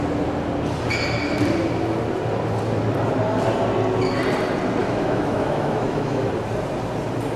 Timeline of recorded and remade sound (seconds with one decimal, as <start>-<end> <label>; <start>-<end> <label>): 0.0-4.8 recorded; 4.8-6.3 remade; 6.3-7.4 recorded